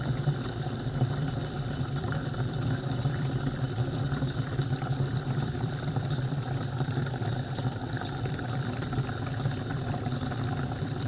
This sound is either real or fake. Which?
fake